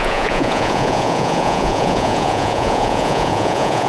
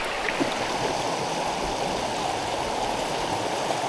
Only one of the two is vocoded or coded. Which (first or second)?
first